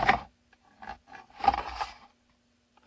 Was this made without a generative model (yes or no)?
yes